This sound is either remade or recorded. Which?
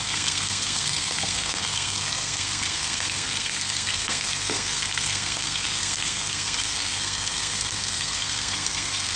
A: remade